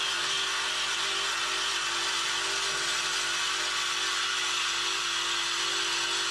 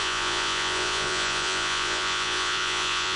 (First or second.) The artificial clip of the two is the second